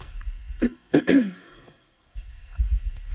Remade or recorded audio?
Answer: remade